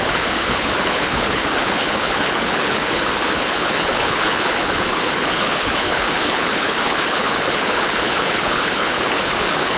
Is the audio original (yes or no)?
no